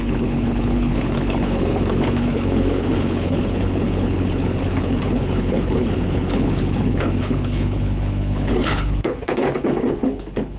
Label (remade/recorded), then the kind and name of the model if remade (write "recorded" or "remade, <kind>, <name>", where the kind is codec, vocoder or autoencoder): remade, codec, HILCodec